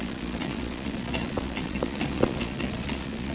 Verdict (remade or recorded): remade